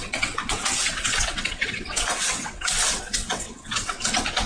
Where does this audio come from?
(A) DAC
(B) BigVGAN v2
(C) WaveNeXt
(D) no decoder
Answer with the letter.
C